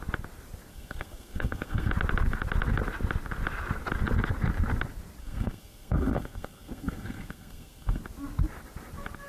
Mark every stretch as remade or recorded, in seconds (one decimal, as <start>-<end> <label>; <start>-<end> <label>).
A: 0.0-0.7 recorded; 0.7-1.9 remade; 1.9-5.2 recorded; 5.2-8.0 remade; 8.0-9.3 recorded